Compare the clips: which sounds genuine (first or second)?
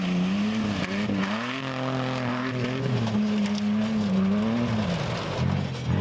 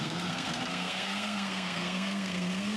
first